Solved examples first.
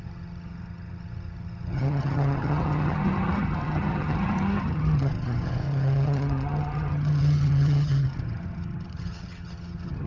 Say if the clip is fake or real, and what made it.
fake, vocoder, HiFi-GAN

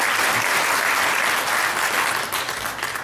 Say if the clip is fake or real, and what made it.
real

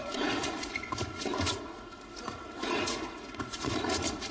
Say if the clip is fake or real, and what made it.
fake, vocoder, Vocos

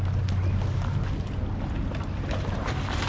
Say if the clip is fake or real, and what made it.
real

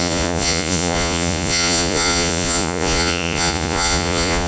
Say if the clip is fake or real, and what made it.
fake, vocoder, Vocos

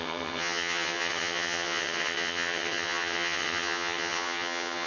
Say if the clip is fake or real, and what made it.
fake, vocoder, HiFi-GAN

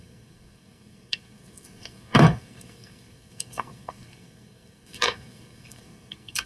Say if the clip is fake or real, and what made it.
fake, codec, SNAC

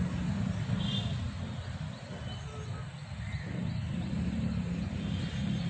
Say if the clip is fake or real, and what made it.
real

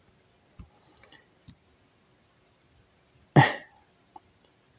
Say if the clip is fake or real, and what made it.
real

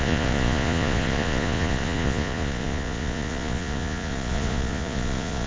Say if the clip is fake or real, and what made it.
fake, vocoder, Vocos